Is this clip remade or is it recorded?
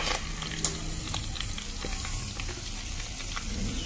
recorded